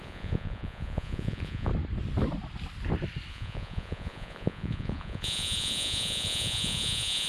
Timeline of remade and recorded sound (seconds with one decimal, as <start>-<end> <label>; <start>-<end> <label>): 0.0-1.7 remade; 1.7-3.3 recorded; 3.3-7.3 remade